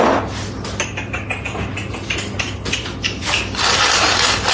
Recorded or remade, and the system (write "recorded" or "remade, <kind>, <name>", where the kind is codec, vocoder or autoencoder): recorded